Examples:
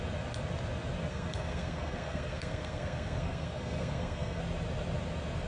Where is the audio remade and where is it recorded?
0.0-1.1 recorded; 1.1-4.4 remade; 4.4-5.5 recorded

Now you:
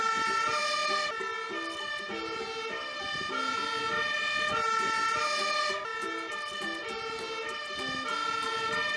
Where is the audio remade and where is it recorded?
0.0-8.2 recorded; 8.2-9.0 remade

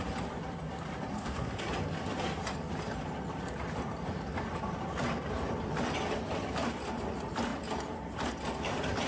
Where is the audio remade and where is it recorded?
0.0-1.1 recorded; 1.1-1.6 remade; 1.6-9.1 recorded